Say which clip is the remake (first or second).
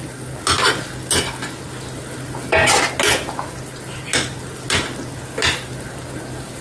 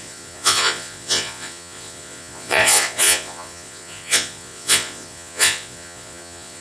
second